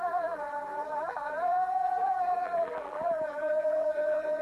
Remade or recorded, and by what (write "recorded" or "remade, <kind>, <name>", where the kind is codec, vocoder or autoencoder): remade, vocoder, BigVGAN v2